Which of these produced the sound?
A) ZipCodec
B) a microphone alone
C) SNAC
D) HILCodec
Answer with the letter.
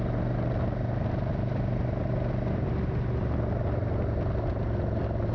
B